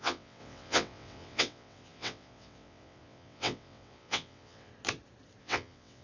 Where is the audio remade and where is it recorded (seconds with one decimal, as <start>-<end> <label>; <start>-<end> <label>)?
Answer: 0.0-4.7 remade; 4.7-5.4 recorded; 5.4-6.0 remade